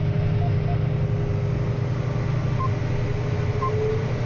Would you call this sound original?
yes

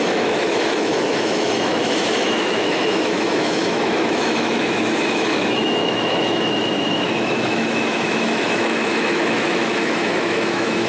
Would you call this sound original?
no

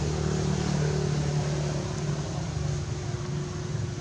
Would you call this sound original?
yes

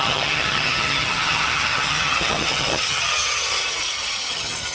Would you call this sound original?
no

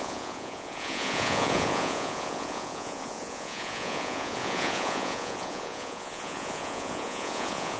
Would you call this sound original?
no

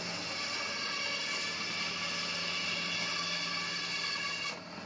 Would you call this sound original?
yes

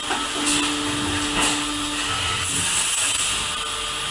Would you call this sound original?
yes